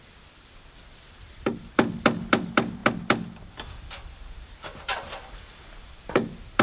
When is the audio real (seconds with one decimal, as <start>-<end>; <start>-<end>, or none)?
none